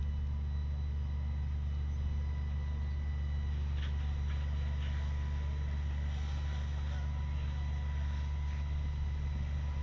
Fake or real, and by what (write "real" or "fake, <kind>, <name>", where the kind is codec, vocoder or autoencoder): real